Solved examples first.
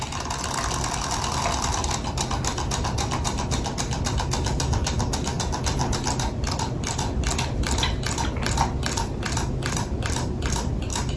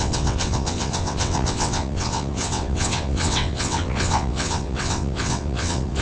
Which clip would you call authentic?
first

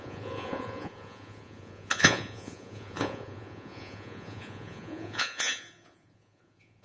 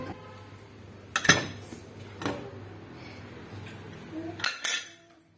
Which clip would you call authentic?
second